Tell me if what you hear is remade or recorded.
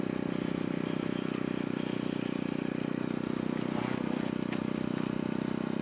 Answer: recorded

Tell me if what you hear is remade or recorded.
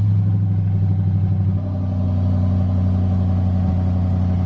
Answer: recorded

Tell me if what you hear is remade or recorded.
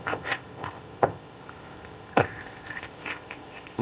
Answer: remade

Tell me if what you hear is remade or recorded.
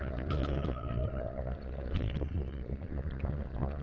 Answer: remade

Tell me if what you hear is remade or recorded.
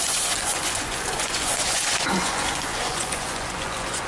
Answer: remade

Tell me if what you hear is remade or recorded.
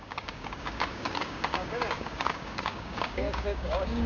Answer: remade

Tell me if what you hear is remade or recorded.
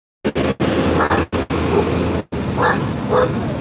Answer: recorded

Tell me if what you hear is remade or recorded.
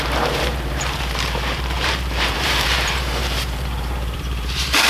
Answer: remade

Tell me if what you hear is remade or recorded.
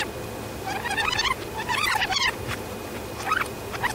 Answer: recorded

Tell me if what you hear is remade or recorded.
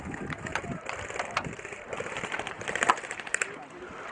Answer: remade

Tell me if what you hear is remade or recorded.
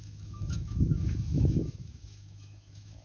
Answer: remade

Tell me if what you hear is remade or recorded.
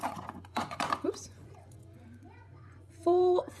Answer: remade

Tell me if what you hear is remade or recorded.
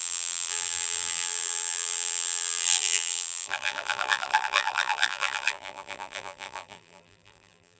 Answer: remade